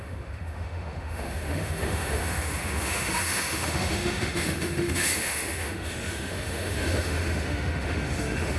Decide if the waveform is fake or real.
fake